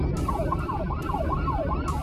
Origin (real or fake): real